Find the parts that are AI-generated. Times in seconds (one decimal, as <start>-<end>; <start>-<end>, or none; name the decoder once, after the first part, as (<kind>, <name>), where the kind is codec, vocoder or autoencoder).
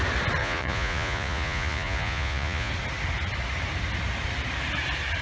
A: 0.4-2.7 (vocoder, Vocos)